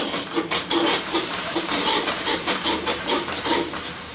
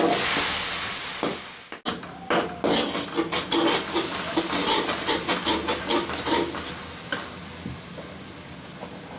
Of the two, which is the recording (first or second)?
second